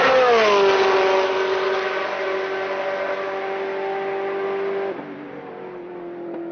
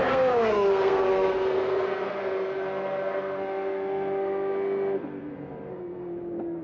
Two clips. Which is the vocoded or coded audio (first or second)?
second